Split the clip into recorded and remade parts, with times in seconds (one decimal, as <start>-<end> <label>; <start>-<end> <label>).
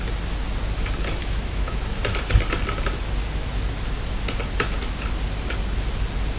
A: 0.0-1.2 recorded; 1.2-1.8 remade; 1.8-6.4 recorded